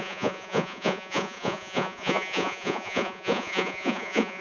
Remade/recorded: remade